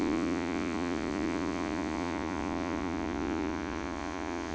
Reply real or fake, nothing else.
fake